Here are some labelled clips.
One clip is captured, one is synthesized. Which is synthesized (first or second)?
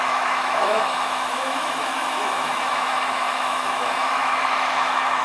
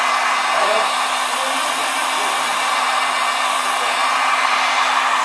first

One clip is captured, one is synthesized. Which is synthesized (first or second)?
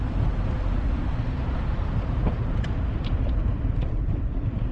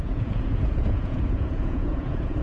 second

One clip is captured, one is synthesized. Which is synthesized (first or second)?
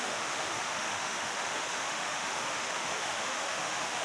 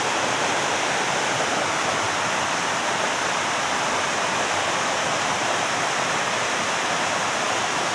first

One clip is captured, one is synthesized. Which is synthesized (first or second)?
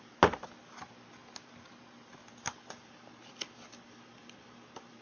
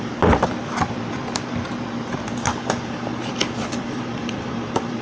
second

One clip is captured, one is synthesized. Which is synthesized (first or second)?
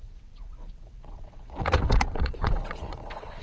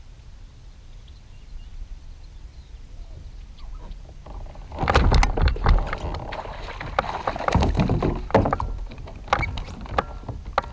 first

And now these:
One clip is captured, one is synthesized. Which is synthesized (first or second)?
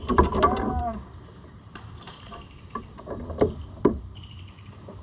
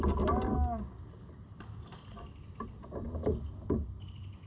first